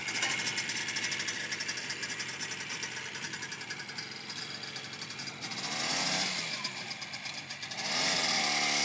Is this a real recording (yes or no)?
yes